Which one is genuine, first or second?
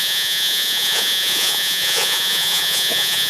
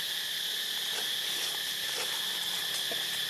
second